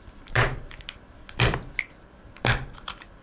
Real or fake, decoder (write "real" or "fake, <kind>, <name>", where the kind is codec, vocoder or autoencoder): fake, vocoder, BigVGAN v2